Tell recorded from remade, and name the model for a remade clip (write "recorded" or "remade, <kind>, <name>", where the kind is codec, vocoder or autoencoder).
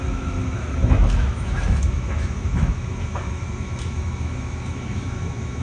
remade, autoencoder, DAC-VAE